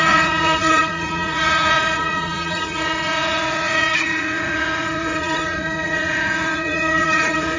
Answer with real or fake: fake